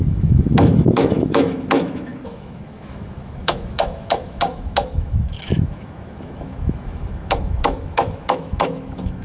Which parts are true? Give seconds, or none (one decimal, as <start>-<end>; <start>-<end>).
none

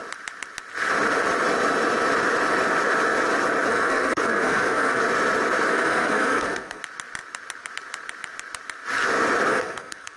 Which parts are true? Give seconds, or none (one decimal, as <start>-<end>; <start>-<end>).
0.0-3.7; 5.0-5.7; 6.8-9.5